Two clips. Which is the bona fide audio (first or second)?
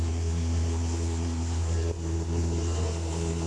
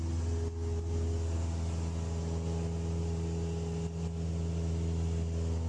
second